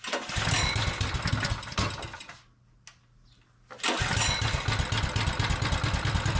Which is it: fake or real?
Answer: real